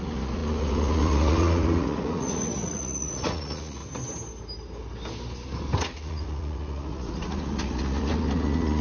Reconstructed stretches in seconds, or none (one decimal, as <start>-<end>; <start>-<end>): 0.0-3.8; 5.8-8.8